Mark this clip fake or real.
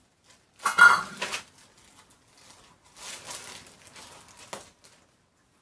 real